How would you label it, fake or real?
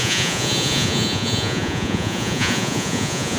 fake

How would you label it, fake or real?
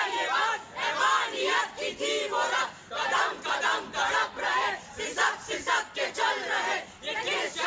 real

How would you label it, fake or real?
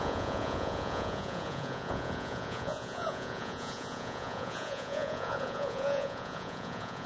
fake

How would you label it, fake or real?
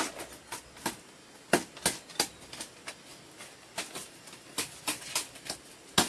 real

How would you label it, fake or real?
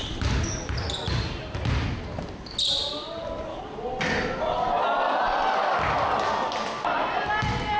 real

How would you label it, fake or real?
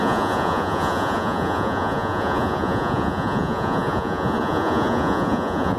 fake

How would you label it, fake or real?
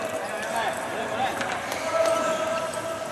real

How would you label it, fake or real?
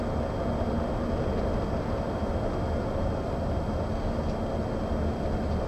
real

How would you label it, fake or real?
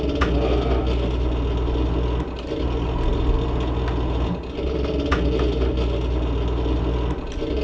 real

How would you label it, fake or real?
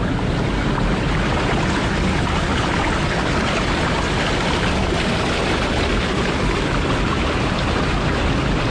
real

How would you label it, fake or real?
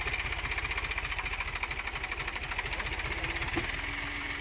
real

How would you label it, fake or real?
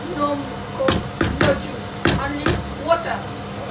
real